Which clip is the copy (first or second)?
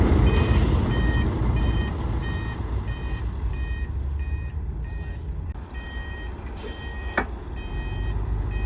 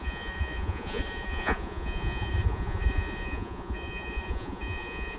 second